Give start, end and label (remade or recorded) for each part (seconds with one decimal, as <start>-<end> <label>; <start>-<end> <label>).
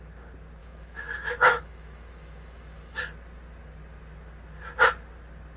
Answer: 0.0-0.6 recorded; 0.6-3.0 remade; 3.0-5.6 recorded